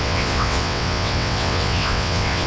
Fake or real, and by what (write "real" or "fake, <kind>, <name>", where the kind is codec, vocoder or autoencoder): fake, vocoder, WaveNeXt